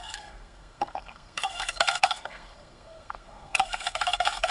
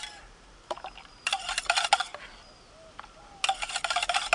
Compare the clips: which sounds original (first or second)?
second